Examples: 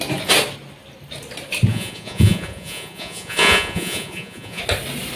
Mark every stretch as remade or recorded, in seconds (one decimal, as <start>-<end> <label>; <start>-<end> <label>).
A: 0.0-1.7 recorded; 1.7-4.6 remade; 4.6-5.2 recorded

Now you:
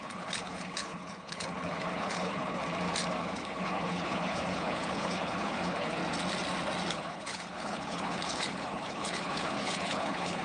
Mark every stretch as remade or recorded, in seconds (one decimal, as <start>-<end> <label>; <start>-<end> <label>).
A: 0.0-2.6 remade; 2.6-3.2 recorded; 3.2-6.0 remade; 6.0-6.9 recorded; 6.9-10.4 remade

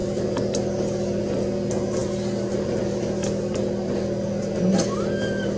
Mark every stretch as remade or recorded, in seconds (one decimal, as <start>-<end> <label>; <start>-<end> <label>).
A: 0.0-5.6 recorded

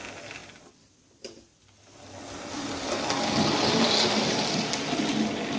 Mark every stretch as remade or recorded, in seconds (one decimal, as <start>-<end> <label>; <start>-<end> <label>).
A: 0.0-5.6 recorded

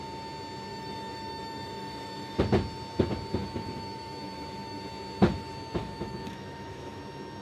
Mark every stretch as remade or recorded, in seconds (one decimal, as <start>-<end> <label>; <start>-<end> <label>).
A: 0.0-0.7 recorded; 0.7-2.4 remade; 2.4-3.4 recorded; 3.4-4.8 remade; 4.8-5.8 recorded; 5.8-7.0 remade; 7.0-7.4 recorded